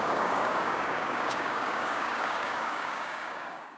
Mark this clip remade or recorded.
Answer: remade